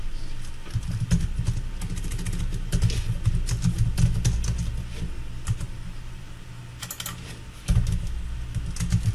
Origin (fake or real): real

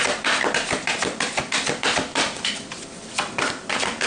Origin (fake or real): fake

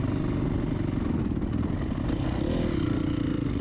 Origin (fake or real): real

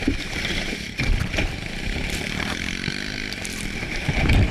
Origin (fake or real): fake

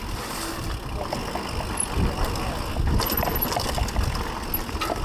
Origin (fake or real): real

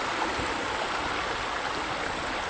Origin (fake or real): real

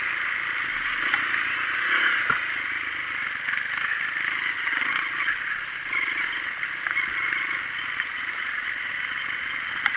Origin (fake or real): real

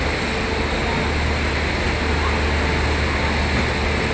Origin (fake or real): real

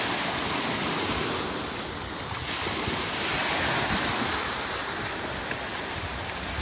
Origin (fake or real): real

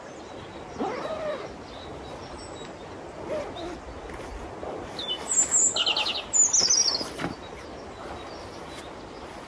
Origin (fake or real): real